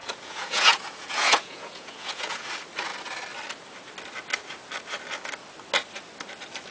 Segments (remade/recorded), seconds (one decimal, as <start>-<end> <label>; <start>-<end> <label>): 0.0-2.5 remade; 2.5-6.7 recorded